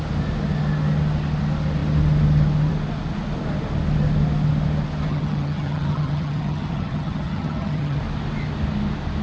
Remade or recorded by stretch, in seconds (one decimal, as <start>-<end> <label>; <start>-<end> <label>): 0.0-5.1 recorded; 5.1-8.0 remade; 8.0-9.2 recorded

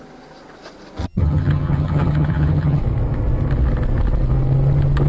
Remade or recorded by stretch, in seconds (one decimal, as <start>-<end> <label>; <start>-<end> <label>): 0.0-1.0 recorded; 1.0-2.8 remade; 2.8-5.1 recorded